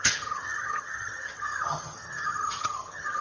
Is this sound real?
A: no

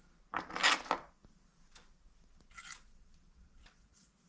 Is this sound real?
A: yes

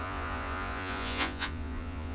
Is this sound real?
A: no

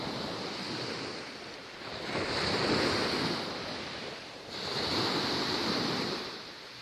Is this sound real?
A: yes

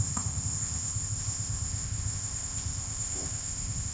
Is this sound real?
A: no